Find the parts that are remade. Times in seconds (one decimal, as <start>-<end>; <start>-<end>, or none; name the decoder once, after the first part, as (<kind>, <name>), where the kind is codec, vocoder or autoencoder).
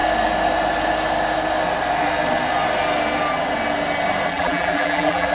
4.3-5.3 (vocoder, BigVGAN v2)